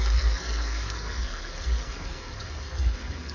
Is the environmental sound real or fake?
fake